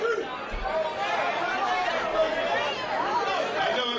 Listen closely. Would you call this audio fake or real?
real